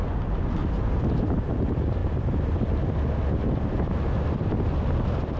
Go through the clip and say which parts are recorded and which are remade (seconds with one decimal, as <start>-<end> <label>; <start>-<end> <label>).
0.0-0.6 remade; 0.6-1.2 recorded; 1.2-2.0 remade; 2.0-5.4 recorded